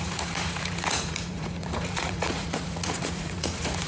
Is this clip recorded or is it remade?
remade